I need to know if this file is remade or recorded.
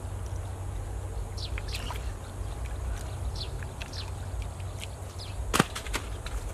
recorded